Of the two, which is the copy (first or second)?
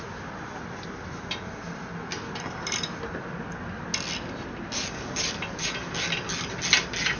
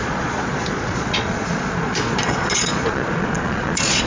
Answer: second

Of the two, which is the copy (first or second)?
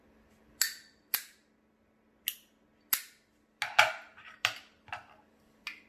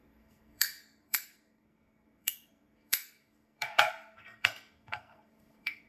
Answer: second